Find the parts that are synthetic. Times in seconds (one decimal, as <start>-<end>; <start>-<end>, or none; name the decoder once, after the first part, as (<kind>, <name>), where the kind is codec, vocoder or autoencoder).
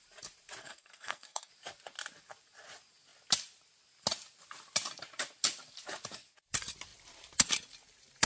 0.6-1.5 (codec, SNAC)